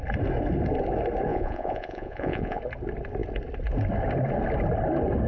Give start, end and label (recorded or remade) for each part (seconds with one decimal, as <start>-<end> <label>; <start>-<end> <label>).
0.0-1.3 recorded; 1.3-2.6 remade; 2.6-5.3 recorded